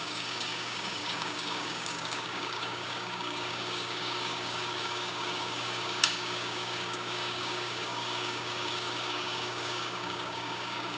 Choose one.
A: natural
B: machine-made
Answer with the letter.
B